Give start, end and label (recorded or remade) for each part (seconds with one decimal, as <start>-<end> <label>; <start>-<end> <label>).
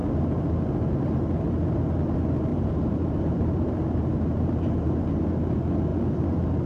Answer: 0.0-2.5 recorded; 2.5-4.9 remade; 4.9-6.7 recorded